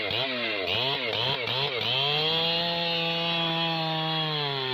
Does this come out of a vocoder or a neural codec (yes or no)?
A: no